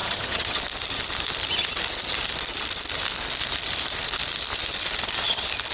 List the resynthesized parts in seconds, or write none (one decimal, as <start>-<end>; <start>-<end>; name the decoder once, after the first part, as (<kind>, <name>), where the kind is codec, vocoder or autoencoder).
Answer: 0.0-0.6 (vocoder, HiFi-GAN)